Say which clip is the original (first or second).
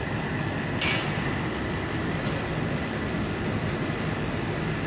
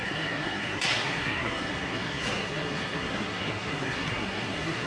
first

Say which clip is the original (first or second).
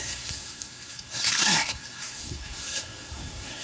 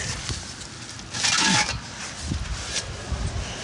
second